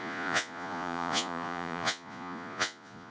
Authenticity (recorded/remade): remade